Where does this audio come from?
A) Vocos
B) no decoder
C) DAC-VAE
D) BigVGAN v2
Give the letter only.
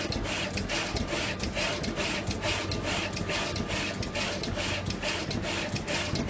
B